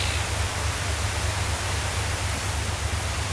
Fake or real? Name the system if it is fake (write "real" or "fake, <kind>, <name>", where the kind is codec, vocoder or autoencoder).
real